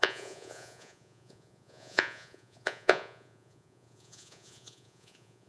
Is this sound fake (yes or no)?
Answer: yes